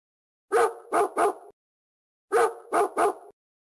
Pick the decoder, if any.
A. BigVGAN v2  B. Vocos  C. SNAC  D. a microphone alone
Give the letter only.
D